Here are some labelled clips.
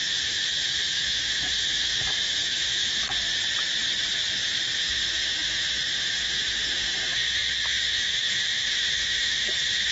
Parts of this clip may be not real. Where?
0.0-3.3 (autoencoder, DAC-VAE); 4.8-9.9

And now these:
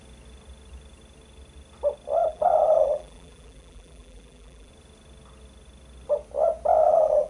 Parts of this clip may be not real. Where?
2.2-4.7 (vocoder, BigVGAN v2); 6.8-7.3

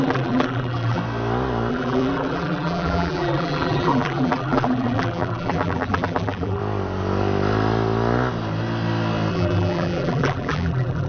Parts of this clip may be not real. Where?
0.0-1.0 (vocoder, BigVGAN v2); 1.7-6.6; 9.3-11.1

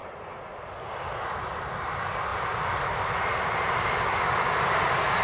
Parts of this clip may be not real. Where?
0.0-0.9 (vocoder, BigVGAN v2); 2.3-3.8

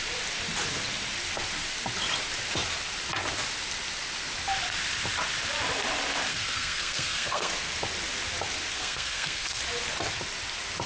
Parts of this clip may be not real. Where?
6.3-7.5 (codec, SNAC); 8.7-9.6

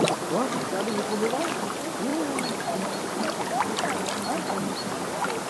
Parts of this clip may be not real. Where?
none

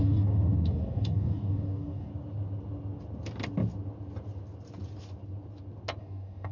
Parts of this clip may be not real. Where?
0.0-2.1 (codec, DAC); 6.0-6.5

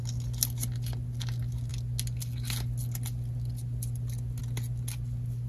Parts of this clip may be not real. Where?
none